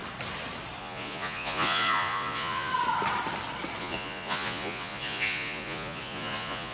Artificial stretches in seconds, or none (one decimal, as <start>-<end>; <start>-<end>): 0.8-2.7; 3.8-6.7